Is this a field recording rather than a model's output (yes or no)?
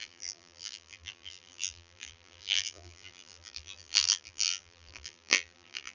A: no